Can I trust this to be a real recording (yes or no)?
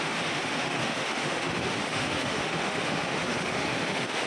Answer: no